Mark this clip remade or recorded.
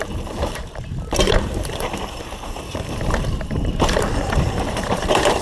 remade